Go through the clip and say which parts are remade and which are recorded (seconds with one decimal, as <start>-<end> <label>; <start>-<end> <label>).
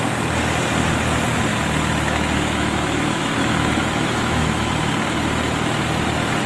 0.0-1.5 recorded; 1.5-4.9 remade; 4.9-6.5 recorded